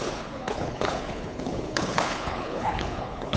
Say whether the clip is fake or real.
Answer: fake